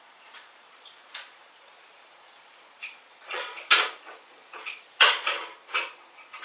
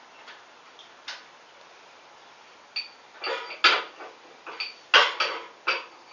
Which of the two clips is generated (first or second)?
first